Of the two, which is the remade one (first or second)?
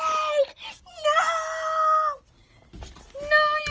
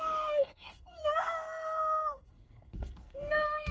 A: second